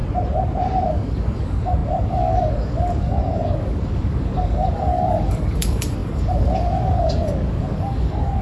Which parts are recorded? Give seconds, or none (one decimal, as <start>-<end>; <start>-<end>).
0.0-0.9